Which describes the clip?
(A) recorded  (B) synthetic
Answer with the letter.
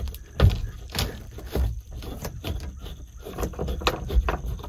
A